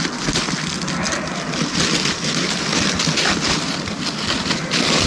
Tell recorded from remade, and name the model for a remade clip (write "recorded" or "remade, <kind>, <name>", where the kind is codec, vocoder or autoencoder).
recorded